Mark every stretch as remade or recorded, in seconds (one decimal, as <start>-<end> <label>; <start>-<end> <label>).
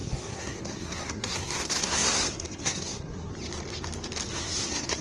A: 0.0-3.3 remade; 3.3-4.3 recorded; 4.3-5.0 remade